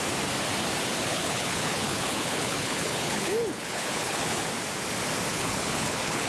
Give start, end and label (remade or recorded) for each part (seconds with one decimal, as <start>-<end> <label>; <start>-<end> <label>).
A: 0.0-1.1 recorded; 1.1-4.4 remade; 4.4-5.3 recorded; 5.3-6.3 remade